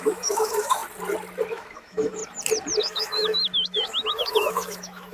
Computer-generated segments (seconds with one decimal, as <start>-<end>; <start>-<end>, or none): 0.0-0.8; 1.5-2.2; 2.8-5.1